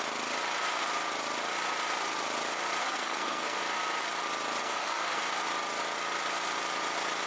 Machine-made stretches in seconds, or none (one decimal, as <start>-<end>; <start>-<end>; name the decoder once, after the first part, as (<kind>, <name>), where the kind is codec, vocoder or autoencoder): 2.8-3.6 (codec, SNAC); 4.6-5.2